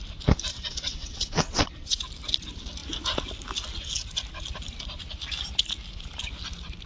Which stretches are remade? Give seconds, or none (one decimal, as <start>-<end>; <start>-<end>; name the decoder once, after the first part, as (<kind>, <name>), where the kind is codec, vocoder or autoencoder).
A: 0.5-2.0 (vocoder, WaveNeXt)